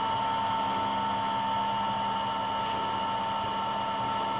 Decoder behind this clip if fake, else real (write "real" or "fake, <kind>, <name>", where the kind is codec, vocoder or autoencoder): real